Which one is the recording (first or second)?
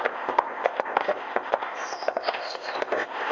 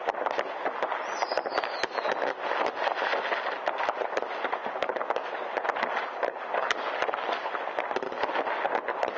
second